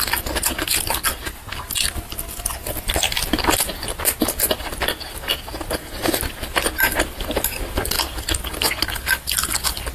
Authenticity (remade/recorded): recorded